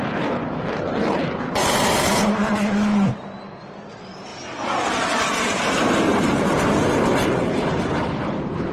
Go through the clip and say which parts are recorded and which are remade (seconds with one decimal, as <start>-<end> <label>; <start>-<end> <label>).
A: 0.0-4.3 remade; 4.3-4.8 recorded; 4.8-8.7 remade